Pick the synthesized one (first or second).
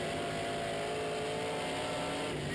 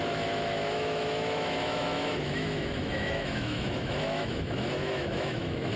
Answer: second